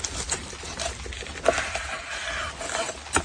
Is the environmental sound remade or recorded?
recorded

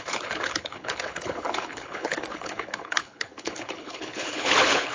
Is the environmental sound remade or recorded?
remade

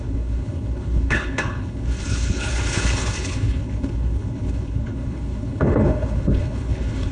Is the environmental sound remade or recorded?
remade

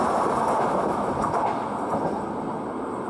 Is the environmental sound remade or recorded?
recorded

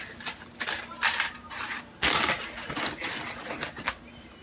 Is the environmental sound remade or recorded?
recorded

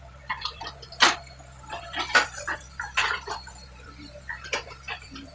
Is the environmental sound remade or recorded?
recorded